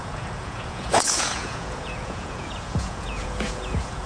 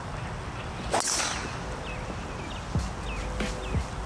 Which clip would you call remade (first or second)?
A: first